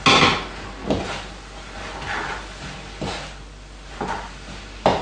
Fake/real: real